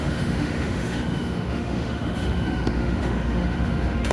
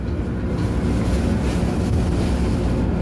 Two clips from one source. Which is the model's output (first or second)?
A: first